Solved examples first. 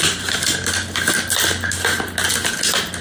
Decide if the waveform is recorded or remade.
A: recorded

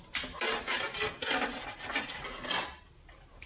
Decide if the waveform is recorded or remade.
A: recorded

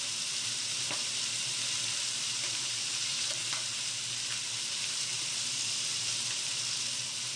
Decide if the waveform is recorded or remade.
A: remade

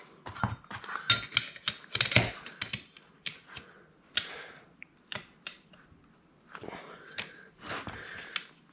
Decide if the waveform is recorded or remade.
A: recorded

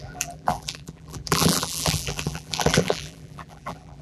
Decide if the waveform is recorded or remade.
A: remade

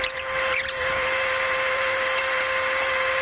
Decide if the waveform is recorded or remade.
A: remade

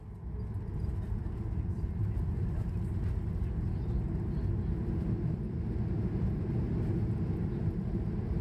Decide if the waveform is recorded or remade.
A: recorded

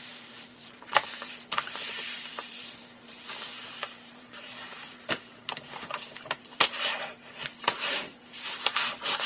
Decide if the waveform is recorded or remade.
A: remade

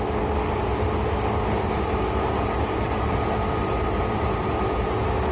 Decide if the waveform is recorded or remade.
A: recorded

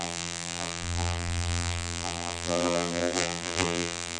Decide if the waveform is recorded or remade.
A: remade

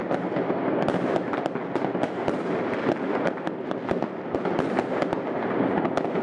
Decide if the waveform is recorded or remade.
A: recorded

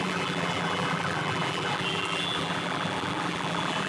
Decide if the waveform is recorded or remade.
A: remade